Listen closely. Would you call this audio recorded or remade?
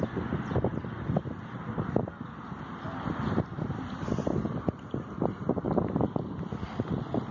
recorded